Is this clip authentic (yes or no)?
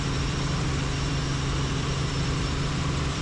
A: no